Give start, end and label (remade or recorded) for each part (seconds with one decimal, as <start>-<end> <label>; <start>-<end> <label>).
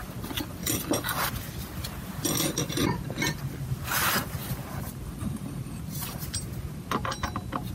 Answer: 0.0-7.7 recorded